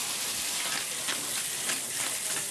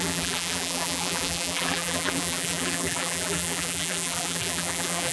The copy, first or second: second